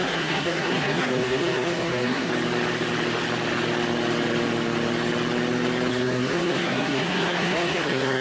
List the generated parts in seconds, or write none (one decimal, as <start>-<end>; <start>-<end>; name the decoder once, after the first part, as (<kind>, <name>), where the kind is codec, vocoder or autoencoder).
0.0-2.3 (codec, SNAC); 5.9-8.2